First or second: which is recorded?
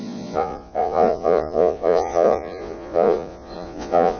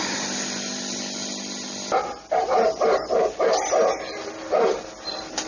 second